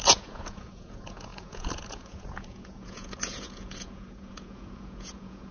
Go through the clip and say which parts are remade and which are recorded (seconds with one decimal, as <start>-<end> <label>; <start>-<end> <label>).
0.0-5.5 remade